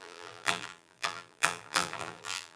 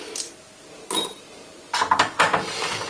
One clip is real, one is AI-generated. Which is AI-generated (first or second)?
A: first